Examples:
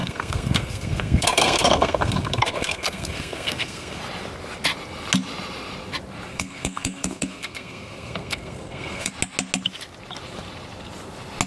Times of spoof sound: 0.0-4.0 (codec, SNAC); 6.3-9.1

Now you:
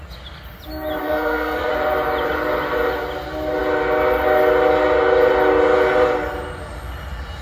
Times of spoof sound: 1.0-1.7 (codec, SNAC)